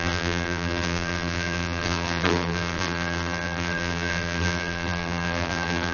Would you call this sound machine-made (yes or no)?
yes